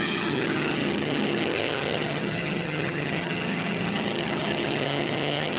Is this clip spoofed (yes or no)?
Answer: yes